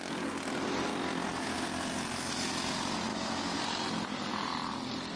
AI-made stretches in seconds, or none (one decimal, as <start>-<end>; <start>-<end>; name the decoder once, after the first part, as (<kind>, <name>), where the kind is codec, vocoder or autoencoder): 3.1-3.6 (autoencoder, DAC-VAE)